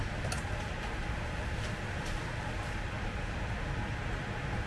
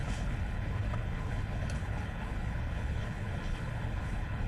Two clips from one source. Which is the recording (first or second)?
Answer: first